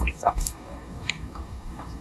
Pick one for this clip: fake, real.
fake